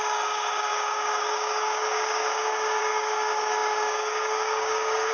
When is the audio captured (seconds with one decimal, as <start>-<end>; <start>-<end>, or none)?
none